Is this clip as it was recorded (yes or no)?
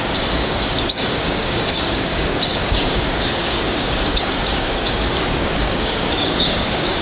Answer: no